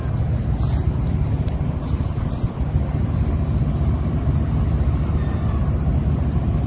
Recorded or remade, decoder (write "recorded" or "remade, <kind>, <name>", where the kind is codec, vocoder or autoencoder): recorded